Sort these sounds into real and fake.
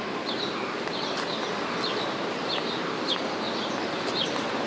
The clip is real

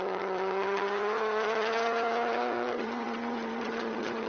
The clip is fake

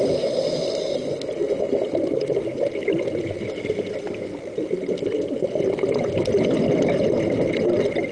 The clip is real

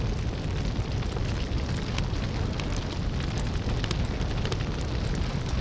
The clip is real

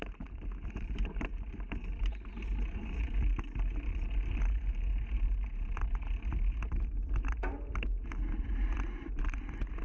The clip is fake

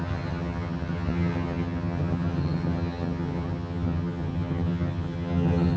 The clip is fake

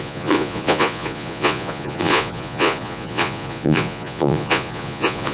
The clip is fake